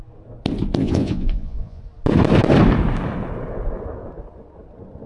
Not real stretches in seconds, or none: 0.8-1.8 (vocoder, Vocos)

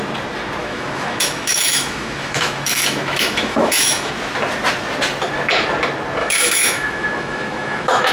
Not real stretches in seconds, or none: 0.6-4.1 (autoencoder, DAC-VAE); 6.2-8.1

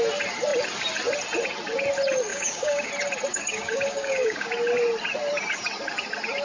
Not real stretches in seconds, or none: 2.3-2.9 (codec, DAC); 3.3-4.5

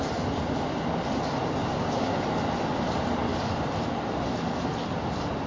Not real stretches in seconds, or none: 1.6-2.2 (codec, DAC)